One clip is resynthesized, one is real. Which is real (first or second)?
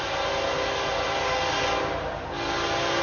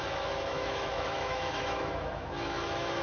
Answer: first